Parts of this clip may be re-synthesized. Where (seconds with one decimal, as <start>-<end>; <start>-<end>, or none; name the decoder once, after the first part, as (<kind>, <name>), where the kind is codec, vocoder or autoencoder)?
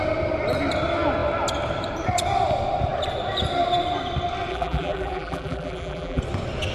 4.5-6.2 (vocoder, BigVGAN v2)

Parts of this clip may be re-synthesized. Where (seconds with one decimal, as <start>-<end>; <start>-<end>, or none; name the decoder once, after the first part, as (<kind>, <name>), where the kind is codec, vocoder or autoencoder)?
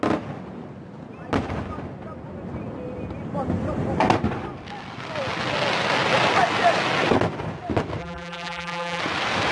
8.0-9.0 (vocoder, BigVGAN v2)